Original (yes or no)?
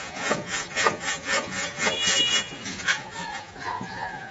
no